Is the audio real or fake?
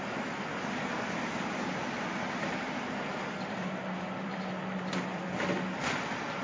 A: fake